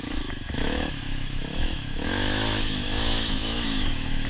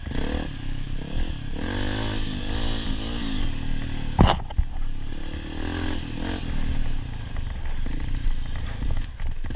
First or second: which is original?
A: second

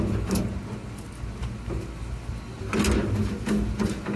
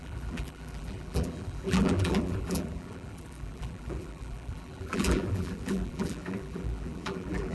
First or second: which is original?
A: first